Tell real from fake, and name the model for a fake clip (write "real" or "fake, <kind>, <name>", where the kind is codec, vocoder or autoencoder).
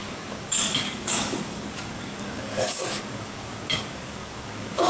fake, codec, DAC